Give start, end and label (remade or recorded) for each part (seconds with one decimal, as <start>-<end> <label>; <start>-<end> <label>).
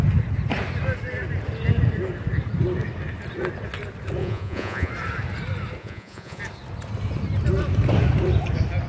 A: 0.0-4.2 recorded; 4.2-4.9 remade; 4.9-5.8 recorded; 5.8-6.4 remade; 6.4-8.9 recorded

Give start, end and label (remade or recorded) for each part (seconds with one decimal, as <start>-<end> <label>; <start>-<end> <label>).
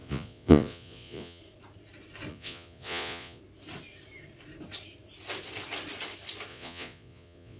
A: 0.0-1.4 remade; 1.4-2.3 recorded; 2.3-3.4 remade; 3.4-6.5 recorded; 6.5-7.6 remade